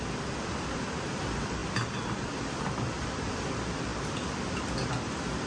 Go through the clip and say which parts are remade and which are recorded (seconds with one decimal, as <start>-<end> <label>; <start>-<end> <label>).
0.0-5.5 remade